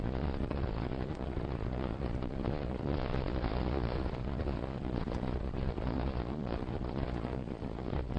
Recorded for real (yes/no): no